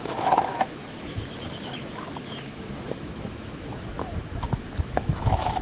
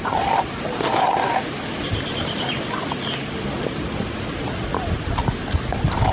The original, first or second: second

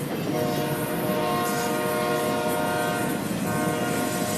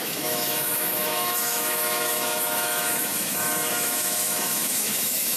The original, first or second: first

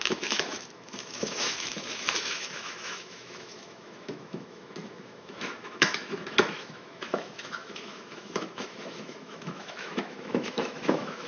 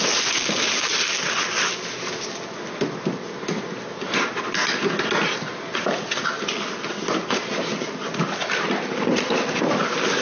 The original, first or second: second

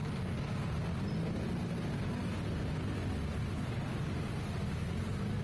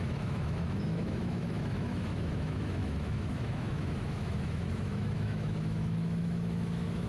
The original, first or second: first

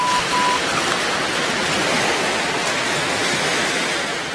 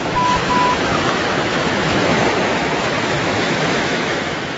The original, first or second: first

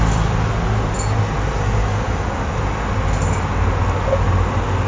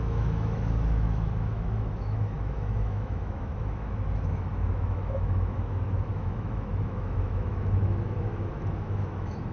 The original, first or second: first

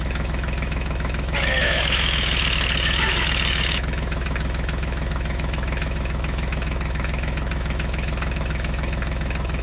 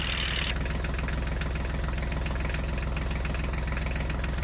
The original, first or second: second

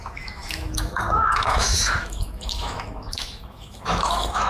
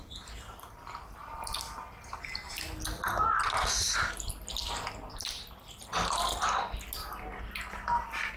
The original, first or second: second